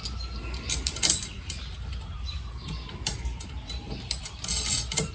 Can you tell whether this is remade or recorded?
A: recorded